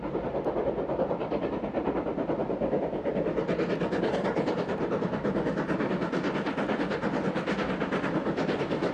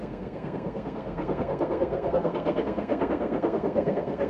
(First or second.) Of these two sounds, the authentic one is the first